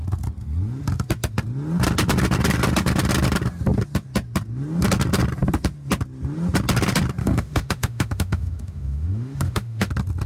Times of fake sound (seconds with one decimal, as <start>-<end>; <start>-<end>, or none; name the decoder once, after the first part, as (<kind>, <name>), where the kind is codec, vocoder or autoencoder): 7.2-9.9 (autoencoder, DAC-VAE)